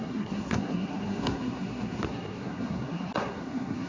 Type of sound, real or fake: fake